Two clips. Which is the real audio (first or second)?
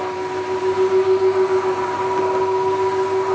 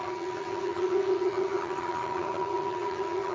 first